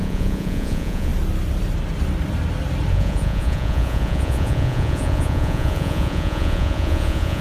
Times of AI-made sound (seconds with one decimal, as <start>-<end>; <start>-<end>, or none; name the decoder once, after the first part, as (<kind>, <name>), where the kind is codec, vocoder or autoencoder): 0.0-1.1 (vocoder, Vocos); 2.9-7.4